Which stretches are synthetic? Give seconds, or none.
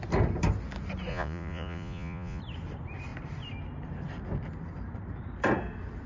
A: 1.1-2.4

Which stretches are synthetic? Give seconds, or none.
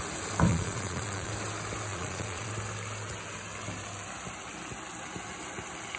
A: 0.5-1.3; 1.9-2.5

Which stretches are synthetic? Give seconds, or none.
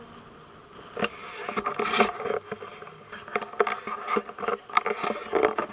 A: none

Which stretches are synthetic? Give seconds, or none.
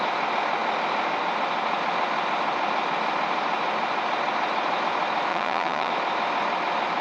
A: 5.3-5.9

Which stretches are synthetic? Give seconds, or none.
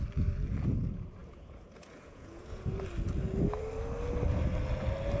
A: 1.2-2.9